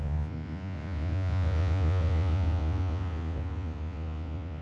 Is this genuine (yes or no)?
no